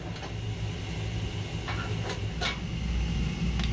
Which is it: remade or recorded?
recorded